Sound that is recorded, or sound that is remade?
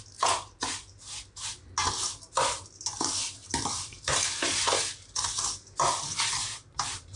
recorded